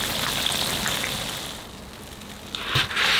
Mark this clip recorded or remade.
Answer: recorded